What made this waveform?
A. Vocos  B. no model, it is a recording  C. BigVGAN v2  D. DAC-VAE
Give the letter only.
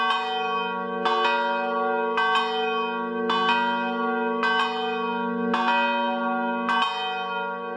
B